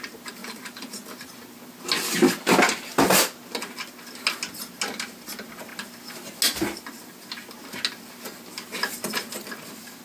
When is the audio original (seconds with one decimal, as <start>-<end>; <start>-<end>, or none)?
0.0-0.4; 1.3-10.0